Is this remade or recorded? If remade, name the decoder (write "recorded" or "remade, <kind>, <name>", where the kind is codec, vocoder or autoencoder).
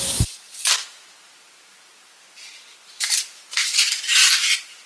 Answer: remade, vocoder, BigVGAN v2